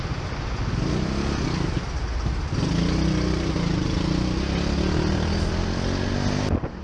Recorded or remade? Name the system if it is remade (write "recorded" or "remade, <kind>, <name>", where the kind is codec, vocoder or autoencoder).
recorded